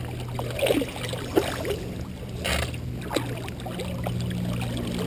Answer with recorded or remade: recorded